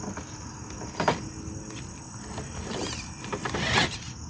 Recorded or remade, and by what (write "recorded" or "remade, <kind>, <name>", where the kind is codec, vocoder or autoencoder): recorded